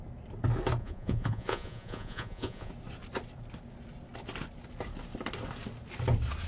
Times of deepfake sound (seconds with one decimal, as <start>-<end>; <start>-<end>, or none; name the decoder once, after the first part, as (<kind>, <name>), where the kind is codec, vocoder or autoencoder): 0.8-2.7 (vocoder, Vocos)